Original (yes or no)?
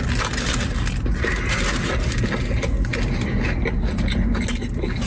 yes